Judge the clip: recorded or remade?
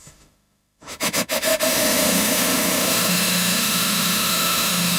remade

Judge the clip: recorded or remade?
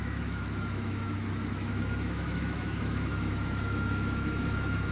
remade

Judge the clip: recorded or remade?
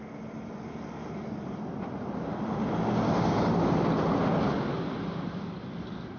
recorded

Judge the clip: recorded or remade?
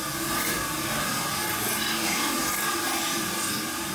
remade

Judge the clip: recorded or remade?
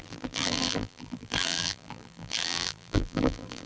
remade